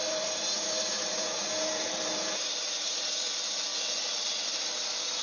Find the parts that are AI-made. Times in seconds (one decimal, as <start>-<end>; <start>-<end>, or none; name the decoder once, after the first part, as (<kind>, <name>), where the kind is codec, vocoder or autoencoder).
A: 0.0-3.1 (vocoder, BigVGAN v2)